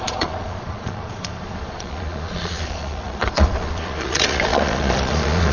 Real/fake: fake